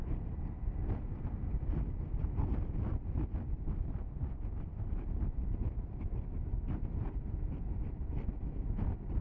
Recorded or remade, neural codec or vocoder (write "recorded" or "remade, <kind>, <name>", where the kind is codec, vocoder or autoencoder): recorded